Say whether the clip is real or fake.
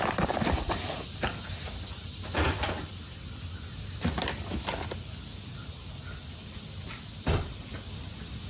real